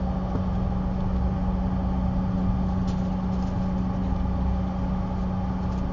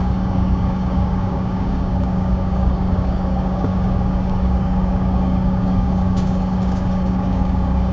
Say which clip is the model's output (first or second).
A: second